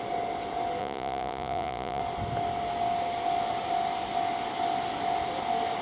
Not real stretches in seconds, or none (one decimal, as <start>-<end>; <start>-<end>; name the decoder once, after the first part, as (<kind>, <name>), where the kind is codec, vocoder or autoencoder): 0.8-2.0 (vocoder, Vocos)